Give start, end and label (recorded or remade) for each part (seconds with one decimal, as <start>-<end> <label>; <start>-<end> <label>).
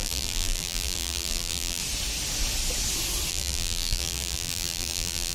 0.0-1.8 remade; 1.8-3.3 recorded; 3.3-5.3 remade